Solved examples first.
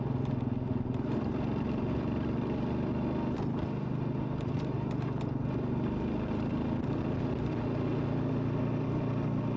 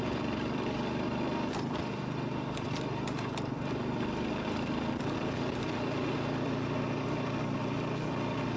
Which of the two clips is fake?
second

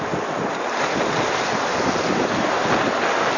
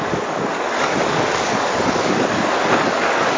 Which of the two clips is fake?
second